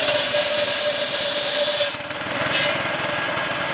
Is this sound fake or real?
real